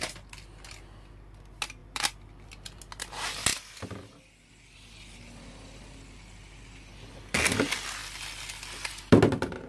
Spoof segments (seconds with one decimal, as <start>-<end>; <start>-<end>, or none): 1.8-2.8